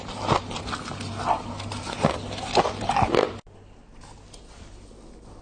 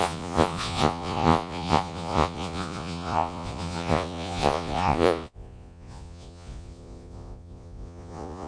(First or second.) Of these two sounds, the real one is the first